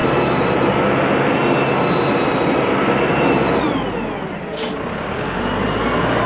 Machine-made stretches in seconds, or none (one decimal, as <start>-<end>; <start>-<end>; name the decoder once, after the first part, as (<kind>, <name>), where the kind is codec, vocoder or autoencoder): 0.0-0.8 (vocoder, BigVGAN v2)